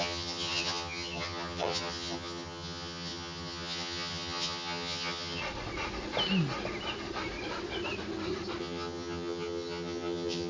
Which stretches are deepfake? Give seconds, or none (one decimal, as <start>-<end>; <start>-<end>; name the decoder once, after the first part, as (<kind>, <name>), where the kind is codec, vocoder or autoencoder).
0.0-5.4 (vocoder, HiFi-GAN); 8.6-10.5